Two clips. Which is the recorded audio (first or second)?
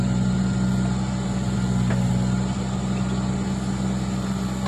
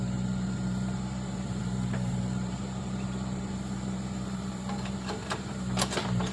first